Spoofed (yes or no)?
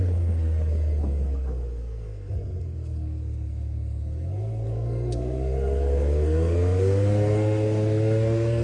yes